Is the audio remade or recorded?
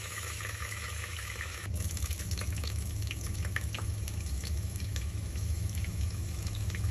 remade